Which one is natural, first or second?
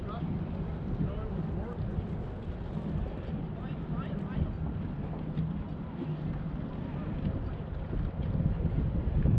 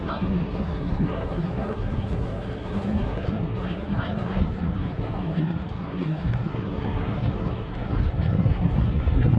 first